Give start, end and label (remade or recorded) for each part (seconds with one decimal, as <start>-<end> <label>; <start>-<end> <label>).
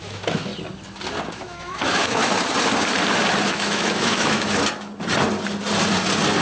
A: 0.0-0.5 remade; 0.5-1.3 recorded; 1.3-2.2 remade; 2.2-3.5 recorded; 3.5-4.6 remade; 4.6-6.4 recorded